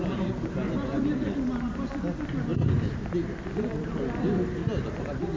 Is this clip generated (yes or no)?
no